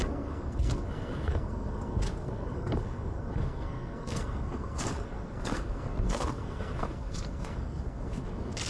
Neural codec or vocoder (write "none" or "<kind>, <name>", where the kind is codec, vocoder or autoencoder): codec, SNAC